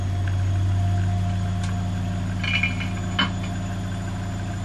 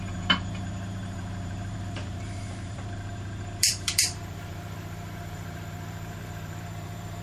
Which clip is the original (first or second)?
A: first